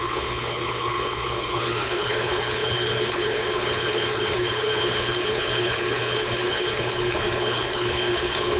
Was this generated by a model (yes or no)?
yes